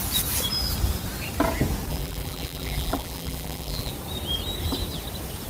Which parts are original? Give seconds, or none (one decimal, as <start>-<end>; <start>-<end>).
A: 0.0-1.9; 3.9-5.5